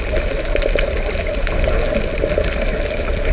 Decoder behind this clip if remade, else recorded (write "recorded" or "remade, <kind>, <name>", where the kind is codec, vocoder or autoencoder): recorded